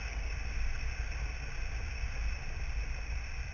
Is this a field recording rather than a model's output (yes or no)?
yes